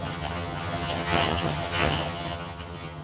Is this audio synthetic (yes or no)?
yes